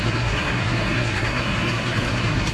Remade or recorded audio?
remade